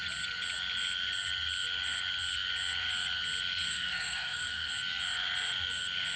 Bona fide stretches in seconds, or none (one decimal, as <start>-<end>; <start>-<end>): 0.0-3.7; 4.7-6.2